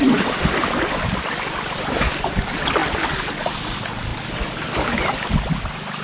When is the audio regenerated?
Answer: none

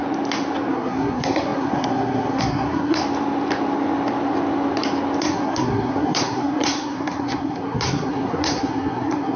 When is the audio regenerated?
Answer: 0.7-3.0 (codec, SNAC); 5.2-9.4

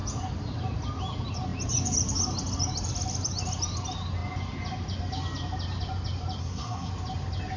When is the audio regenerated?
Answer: 6.4-6.9 (codec, SNAC)

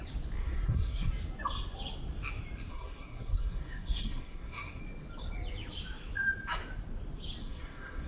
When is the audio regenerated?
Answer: 0.4-1.1 (codec, SNAC); 2.7-4.8; 7.4-8.1

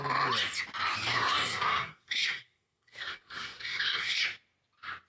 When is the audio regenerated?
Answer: 1.1-4.2 (codec, SNAC)

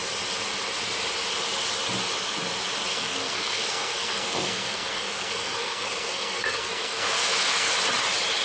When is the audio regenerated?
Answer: 2.9-7.7 (codec, SNAC)